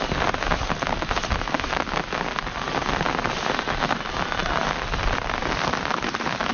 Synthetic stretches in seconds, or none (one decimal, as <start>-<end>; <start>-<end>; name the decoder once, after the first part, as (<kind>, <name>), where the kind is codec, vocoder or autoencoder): none